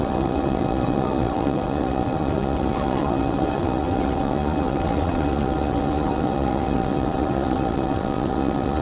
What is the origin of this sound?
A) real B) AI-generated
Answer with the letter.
B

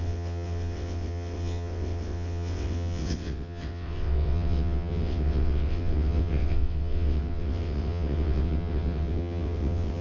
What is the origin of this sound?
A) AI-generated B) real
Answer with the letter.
A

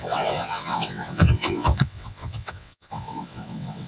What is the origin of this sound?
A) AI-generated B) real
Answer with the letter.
A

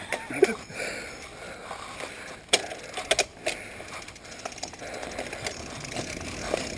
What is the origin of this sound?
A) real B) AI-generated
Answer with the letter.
A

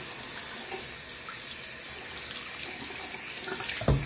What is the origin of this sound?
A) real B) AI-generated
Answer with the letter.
A